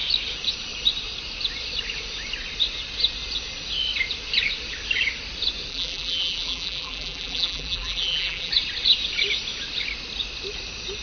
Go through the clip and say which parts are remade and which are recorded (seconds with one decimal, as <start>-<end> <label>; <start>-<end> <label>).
0.0-5.7 recorded; 5.7-8.5 remade; 8.5-11.0 recorded

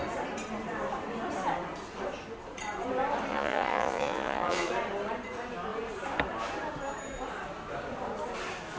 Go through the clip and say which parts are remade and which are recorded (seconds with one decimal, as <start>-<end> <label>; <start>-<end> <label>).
0.0-3.3 recorded; 3.3-4.7 remade; 4.7-8.8 recorded